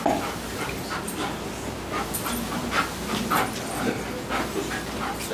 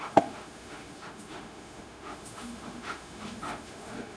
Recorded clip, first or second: first